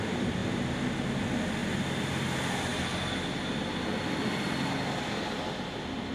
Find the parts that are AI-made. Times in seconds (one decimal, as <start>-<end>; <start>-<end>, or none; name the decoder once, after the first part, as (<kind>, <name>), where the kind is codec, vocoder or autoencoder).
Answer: 1.6-2.1 (vocoder, BigVGAN v2)